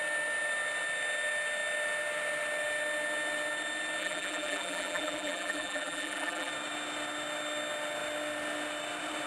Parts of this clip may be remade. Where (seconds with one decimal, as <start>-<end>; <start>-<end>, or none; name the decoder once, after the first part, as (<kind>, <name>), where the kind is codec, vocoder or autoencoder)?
4.0-6.5 (vocoder, BigVGAN v2)